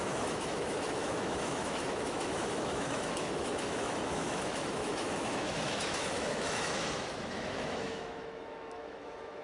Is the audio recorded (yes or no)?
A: no